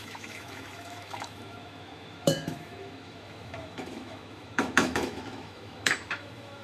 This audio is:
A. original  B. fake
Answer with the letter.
B